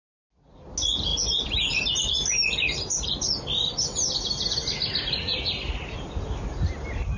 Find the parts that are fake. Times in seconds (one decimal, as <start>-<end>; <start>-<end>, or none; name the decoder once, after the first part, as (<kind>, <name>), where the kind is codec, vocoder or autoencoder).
none